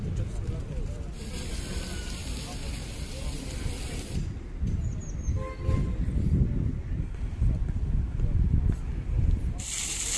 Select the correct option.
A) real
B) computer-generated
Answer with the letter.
A